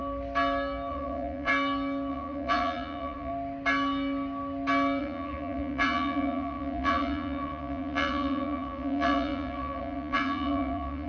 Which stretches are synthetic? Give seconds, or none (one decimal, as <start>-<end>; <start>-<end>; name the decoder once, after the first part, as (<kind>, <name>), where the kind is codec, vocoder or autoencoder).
0.9-1.5 (vocoder, Vocos); 2.1-3.3; 5.0-11.1